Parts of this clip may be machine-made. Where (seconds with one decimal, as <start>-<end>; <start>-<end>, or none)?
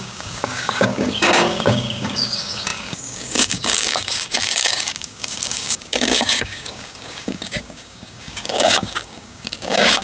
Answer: 0.0-10.0